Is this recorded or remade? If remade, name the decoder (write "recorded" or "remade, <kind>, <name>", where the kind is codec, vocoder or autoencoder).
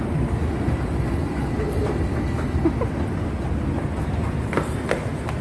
recorded